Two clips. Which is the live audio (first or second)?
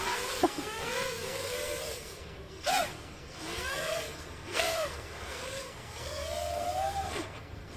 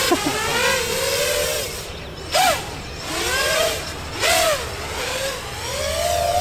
second